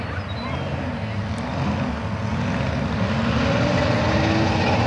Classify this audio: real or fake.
real